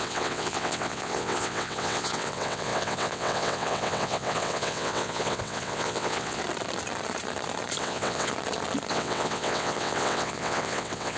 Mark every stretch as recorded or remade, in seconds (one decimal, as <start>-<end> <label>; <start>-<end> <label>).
0.0-6.4 remade; 6.4-7.8 recorded; 7.8-8.3 remade; 8.3-8.9 recorded; 8.9-11.2 remade

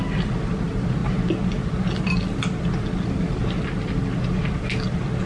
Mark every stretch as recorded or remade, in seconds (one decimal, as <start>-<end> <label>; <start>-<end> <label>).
0.0-5.3 recorded

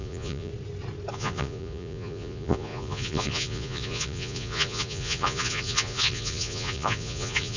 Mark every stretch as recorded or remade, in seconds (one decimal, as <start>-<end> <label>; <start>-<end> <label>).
0.0-0.5 remade; 0.5-1.1 recorded; 1.1-7.6 remade

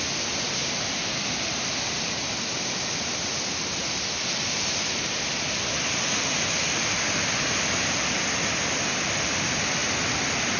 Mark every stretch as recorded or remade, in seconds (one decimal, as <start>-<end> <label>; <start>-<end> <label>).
0.0-0.6 recorded; 0.6-5.1 remade; 5.1-9.8 recorded; 9.8-10.6 remade

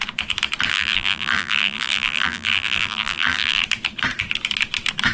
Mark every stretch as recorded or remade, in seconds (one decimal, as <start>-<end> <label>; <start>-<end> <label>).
0.0-0.7 recorded; 0.7-3.6 remade; 3.6-5.1 recorded

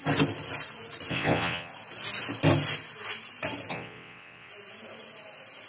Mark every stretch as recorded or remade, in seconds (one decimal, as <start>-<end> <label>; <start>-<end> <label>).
0.0-1.1 recorded; 1.1-1.7 remade; 1.7-3.7 recorded; 3.7-4.5 remade; 4.5-5.7 recorded